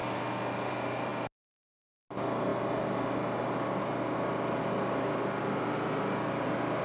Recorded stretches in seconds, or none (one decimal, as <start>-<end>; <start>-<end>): 0.0-6.8

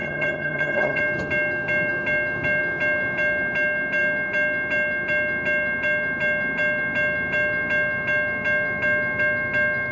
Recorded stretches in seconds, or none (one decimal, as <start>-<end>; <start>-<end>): 1.0-9.9

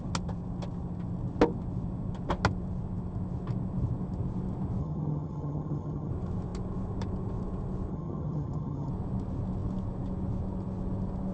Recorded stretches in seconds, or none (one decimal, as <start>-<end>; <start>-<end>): 0.0-4.8; 6.1-7.9; 8.9-11.3

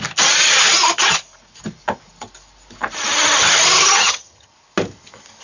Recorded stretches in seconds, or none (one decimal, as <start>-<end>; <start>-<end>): 0.0-3.9; 4.5-5.4

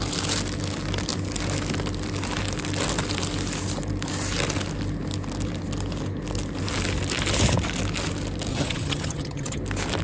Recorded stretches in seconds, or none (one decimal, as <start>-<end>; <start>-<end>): 0.0-8.5; 9.6-10.0

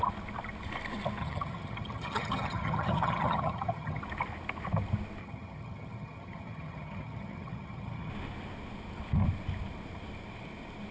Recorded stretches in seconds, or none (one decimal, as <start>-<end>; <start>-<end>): 0.0-1.2; 4.0-5.2; 8.1-10.9

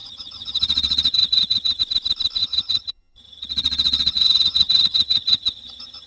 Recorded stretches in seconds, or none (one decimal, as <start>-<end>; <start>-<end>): 1.8-2.4